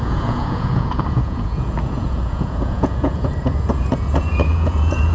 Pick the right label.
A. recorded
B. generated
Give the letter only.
B